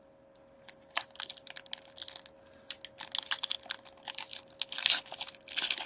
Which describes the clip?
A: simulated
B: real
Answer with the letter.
B